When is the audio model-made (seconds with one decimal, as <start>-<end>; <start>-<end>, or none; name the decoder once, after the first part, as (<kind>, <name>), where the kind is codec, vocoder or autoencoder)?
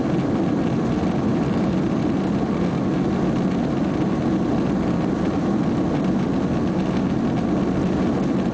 none